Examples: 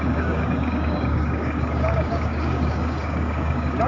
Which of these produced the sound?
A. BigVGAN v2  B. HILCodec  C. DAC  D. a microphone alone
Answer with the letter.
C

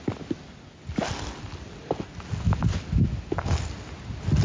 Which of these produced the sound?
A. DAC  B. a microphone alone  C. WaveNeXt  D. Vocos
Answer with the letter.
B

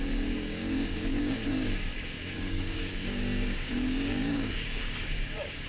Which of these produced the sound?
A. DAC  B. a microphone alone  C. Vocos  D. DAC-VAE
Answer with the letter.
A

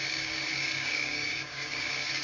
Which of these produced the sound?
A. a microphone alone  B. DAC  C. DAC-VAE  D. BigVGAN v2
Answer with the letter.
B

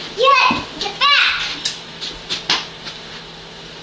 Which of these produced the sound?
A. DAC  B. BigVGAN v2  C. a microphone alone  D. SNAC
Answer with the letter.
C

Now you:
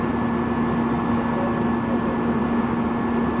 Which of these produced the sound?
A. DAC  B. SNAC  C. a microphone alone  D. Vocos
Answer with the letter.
C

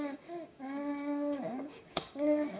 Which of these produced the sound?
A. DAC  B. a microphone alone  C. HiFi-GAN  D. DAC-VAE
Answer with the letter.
A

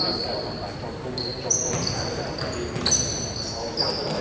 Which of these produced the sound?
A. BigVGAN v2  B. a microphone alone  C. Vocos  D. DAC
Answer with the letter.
B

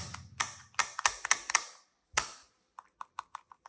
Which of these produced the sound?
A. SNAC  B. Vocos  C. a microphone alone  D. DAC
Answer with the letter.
C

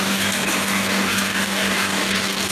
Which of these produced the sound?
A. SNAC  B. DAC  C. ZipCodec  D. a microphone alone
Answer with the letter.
B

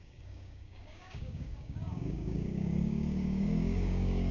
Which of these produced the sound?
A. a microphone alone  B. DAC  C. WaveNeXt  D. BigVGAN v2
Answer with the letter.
B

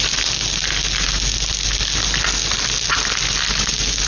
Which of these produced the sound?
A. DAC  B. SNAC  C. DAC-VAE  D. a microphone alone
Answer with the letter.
D